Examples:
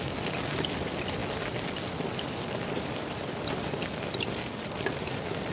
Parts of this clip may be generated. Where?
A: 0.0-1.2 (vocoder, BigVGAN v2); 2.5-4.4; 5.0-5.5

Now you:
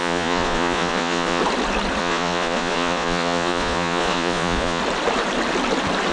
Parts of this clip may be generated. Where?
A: 0.0-1.4 (vocoder, Vocos); 2.0-4.8

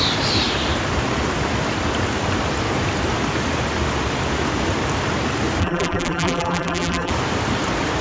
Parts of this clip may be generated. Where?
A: 5.6-7.1 (vocoder, BigVGAN v2)

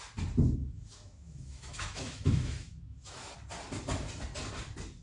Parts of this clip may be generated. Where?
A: 0.6-3.3 (autoencoder, DAC-VAE)

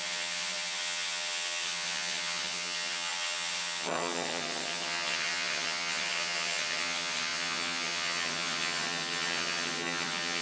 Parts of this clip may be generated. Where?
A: 0.0-10.4 (vocoder, HiFi-GAN)

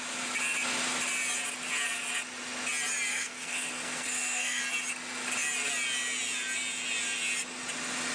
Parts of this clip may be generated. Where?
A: 3.1-4.6 (codec, SNAC)

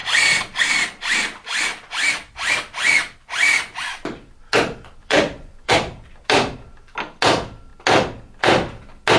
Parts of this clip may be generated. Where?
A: 5.0-5.7 (vocoder, Vocos)